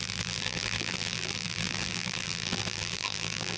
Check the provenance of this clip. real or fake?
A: fake